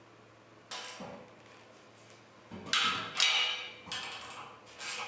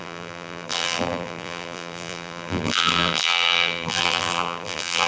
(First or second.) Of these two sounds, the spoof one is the second